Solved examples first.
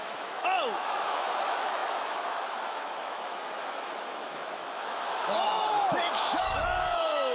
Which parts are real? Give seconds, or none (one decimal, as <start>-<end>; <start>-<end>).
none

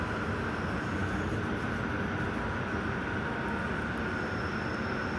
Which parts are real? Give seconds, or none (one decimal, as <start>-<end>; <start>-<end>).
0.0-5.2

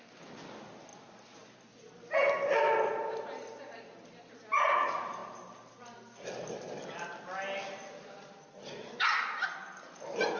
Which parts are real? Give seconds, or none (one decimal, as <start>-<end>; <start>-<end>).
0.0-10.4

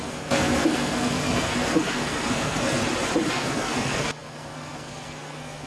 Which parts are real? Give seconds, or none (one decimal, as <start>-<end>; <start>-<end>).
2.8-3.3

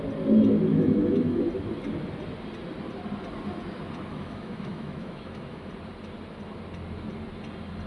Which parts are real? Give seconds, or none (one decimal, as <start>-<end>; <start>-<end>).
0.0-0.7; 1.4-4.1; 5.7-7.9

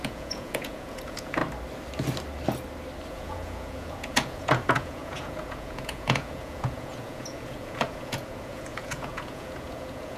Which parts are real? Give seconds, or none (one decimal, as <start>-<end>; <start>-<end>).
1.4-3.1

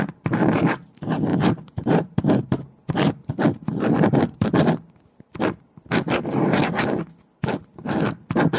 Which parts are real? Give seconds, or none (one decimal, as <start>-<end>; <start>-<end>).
0.0-1.3; 2.5-8.6

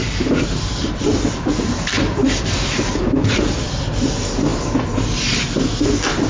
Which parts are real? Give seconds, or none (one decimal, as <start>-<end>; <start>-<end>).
3.8-6.3